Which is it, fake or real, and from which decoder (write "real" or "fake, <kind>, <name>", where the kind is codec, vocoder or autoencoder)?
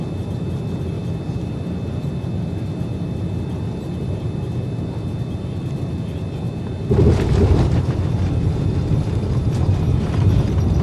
real